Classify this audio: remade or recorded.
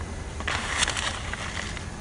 recorded